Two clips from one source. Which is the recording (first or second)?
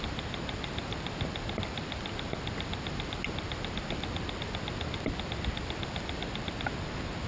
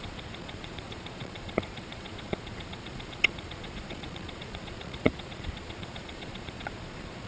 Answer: first